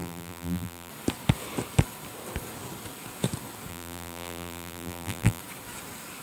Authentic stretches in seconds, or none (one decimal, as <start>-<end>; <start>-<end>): 0.9-3.7; 5.4-6.2